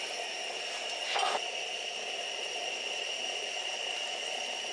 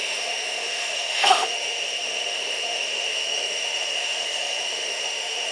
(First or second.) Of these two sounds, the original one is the first